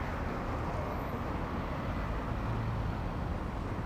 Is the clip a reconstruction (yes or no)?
no